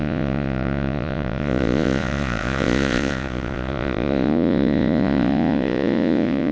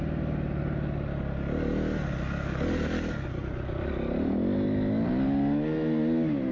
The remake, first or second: first